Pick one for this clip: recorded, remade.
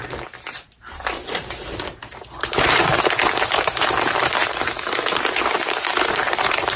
remade